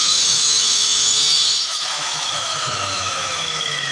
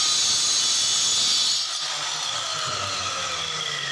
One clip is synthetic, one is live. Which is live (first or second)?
second